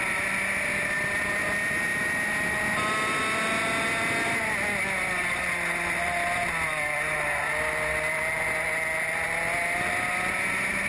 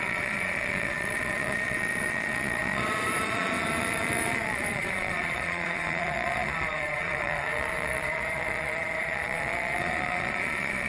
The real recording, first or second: first